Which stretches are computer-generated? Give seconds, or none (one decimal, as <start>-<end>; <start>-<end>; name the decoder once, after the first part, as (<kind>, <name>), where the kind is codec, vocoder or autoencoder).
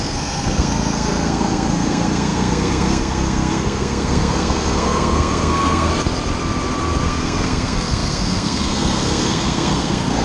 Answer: 0.0-5.9 (codec, SNAC); 7.0-10.2